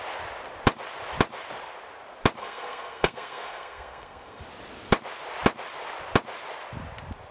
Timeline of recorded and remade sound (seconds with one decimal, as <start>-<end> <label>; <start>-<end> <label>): 0.0-2.4 recorded; 2.4-4.4 remade; 4.4-7.3 recorded